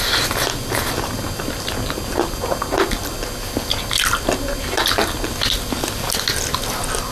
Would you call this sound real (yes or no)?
yes